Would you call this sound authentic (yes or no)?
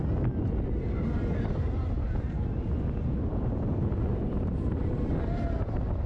yes